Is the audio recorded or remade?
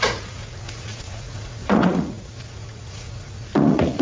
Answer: remade